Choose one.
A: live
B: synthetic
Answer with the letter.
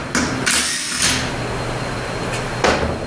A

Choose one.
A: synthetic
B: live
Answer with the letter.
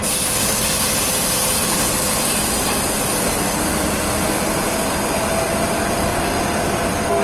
B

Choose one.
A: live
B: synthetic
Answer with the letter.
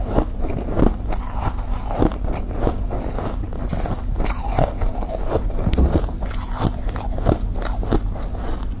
A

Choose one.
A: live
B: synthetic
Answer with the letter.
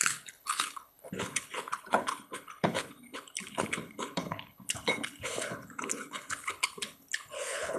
B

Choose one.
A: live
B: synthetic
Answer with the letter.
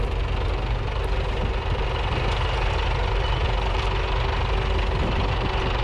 A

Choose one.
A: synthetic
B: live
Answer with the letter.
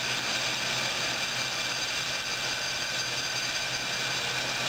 B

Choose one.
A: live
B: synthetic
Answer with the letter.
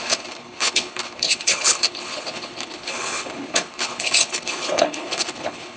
B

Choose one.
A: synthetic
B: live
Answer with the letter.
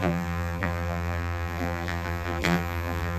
A